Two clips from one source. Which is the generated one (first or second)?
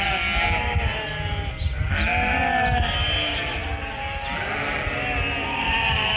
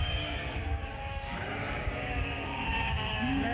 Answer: second